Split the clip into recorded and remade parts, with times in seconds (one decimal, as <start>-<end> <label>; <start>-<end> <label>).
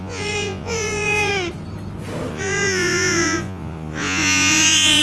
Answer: 0.0-1.3 remade; 1.3-2.3 recorded; 2.3-5.0 remade